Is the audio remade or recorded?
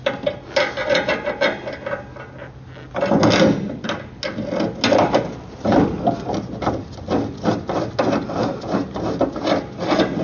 recorded